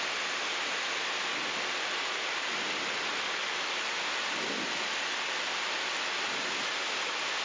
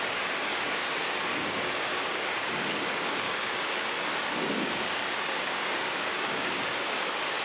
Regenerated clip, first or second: second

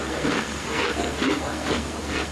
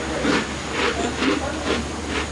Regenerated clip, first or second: first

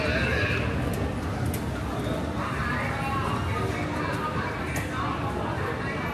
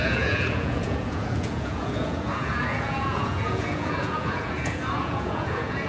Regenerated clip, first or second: second